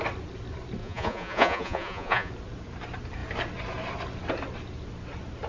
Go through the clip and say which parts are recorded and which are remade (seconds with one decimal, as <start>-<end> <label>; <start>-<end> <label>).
0.0-0.8 recorded; 0.8-2.3 remade; 2.3-5.5 recorded